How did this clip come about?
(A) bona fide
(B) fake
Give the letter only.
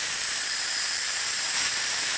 B